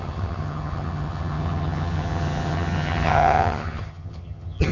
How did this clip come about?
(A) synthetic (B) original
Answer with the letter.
A